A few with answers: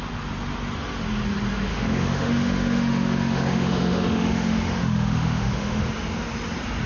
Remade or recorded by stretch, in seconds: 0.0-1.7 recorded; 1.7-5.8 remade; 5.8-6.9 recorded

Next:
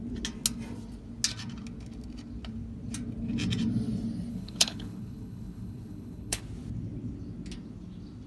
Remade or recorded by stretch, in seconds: 0.0-4.3 recorded; 4.3-6.4 remade; 6.4-8.3 recorded

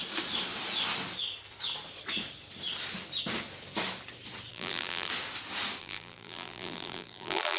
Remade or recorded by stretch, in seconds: 0.0-4.5 recorded; 4.5-5.1 remade; 5.1-5.8 recorded; 5.8-7.6 remade